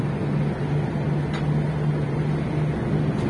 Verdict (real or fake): real